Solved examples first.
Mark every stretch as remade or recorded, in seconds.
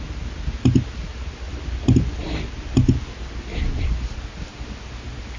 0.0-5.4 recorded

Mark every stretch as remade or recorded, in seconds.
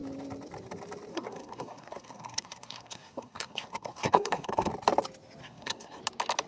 0.0-1.1 recorded; 1.1-4.7 remade; 4.7-5.4 recorded; 5.4-6.0 remade; 6.0-6.5 recorded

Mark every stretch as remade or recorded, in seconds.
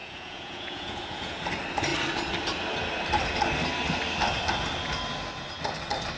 0.0-1.4 remade; 1.4-6.2 recorded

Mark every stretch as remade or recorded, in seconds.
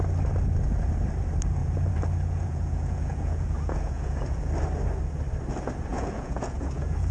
0.0-1.6 recorded; 1.6-4.5 remade; 4.5-5.9 recorded; 5.9-7.1 remade